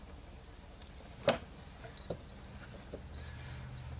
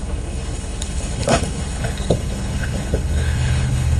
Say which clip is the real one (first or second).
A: first